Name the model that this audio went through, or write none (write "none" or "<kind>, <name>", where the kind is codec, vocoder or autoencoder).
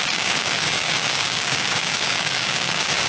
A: codec, DAC